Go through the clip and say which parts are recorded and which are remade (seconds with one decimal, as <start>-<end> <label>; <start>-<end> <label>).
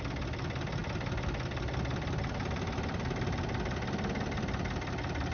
0.0-5.3 recorded